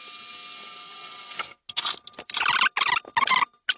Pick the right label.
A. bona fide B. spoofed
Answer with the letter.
A